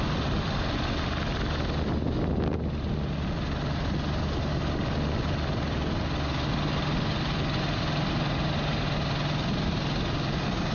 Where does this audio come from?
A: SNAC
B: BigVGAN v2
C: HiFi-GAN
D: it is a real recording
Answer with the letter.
D